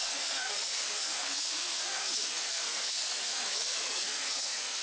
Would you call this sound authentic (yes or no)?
no